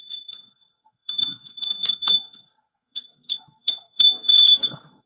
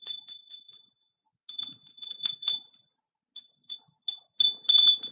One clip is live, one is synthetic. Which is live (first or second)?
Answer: second